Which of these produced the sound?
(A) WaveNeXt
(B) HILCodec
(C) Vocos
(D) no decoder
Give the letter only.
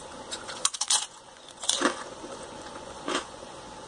C